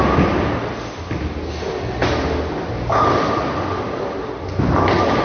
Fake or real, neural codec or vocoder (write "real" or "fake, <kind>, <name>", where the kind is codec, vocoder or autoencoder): real